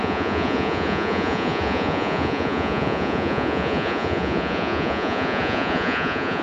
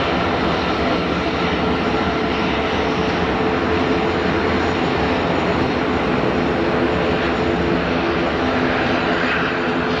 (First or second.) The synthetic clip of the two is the first